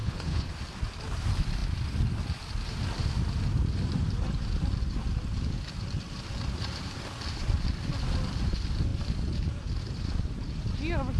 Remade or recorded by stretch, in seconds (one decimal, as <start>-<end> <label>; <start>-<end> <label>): 0.0-0.5 remade; 0.5-11.2 recorded